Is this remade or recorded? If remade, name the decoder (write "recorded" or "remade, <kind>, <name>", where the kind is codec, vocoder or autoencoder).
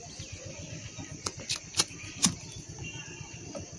recorded